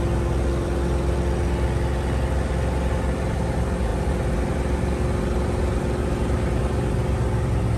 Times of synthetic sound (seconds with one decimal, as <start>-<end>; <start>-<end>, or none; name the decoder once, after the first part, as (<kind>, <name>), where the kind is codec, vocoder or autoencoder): none